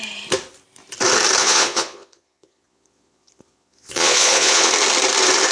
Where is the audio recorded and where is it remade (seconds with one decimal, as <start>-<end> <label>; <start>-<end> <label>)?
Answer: 0.0-1.4 recorded; 1.4-4.7 remade; 4.7-5.5 recorded